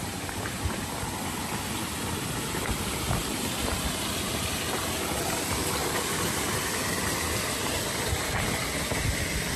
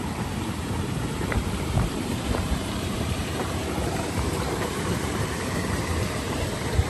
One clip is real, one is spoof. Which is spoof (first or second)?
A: second